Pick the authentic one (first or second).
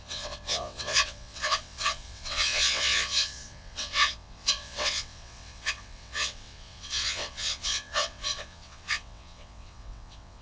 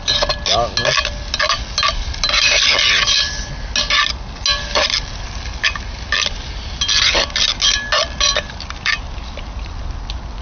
second